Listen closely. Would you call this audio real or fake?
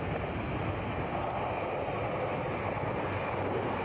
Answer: real